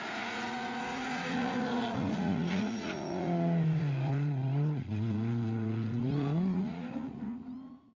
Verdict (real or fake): fake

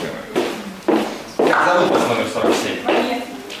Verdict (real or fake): real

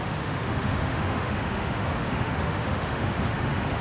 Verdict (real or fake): fake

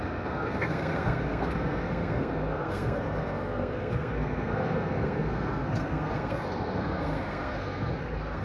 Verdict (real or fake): fake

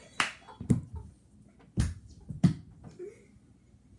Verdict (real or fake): real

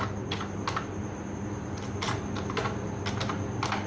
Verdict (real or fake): real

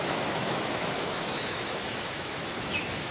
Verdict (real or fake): fake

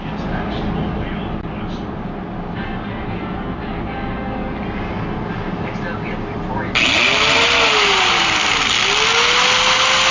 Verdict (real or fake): real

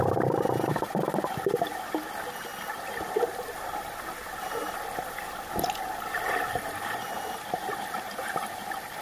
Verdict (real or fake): real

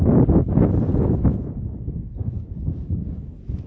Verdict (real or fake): real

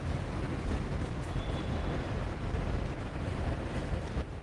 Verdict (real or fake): fake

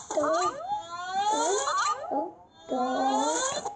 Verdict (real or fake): fake